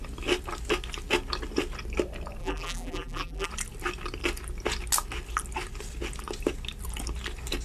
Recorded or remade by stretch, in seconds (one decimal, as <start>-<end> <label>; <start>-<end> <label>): 0.0-2.4 recorded; 2.4-3.5 remade; 3.5-7.6 recorded